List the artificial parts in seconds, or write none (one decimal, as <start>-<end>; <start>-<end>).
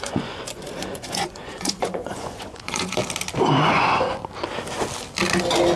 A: 0.0-3.0; 3.6-4.2